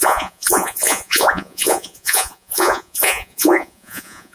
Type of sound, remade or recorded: remade